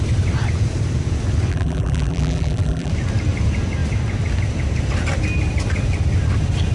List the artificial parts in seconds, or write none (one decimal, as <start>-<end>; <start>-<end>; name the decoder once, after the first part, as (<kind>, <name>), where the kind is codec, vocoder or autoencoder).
1.5-2.9 (vocoder, BigVGAN v2)